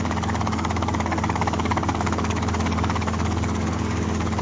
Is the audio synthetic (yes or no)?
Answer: yes